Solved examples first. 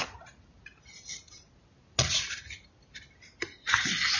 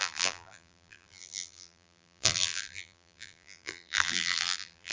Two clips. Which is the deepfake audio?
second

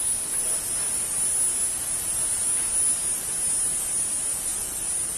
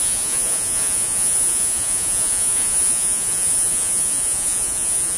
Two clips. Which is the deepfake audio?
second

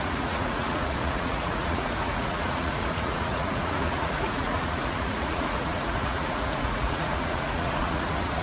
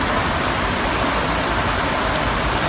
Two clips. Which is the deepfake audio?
first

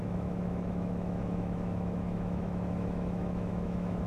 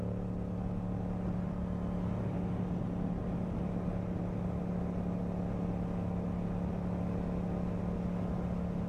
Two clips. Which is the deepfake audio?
first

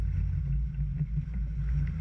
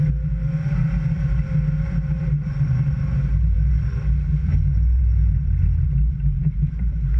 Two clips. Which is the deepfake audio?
second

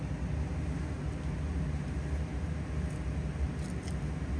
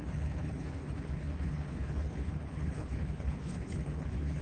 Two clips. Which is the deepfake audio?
second